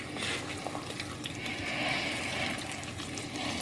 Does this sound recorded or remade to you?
recorded